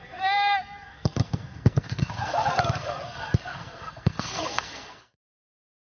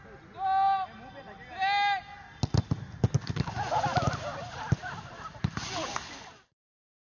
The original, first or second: second